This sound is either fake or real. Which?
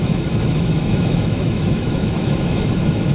fake